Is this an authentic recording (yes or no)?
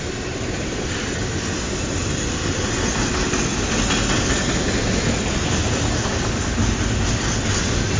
yes